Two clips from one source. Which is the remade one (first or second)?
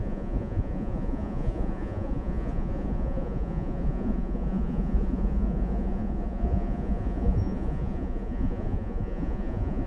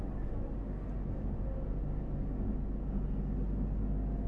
first